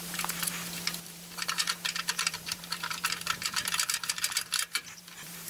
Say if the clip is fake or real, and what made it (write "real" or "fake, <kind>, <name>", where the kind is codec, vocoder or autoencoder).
fake, vocoder, BigVGAN v2